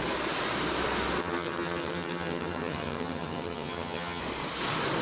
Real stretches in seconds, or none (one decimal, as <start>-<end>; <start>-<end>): 0.0-1.2; 4.2-5.0